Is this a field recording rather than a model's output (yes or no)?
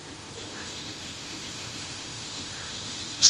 no